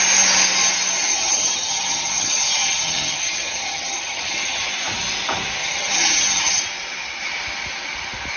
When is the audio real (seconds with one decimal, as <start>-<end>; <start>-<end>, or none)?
0.0-1.1; 4.7-5.6; 6.6-8.4